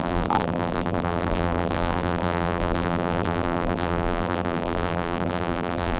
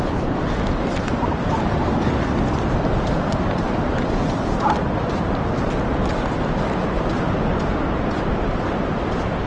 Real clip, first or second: second